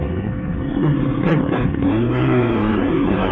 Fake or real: fake